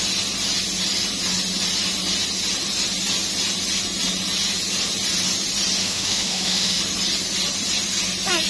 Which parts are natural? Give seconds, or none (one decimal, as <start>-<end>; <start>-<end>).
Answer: 0.0-5.8; 6.8-8.5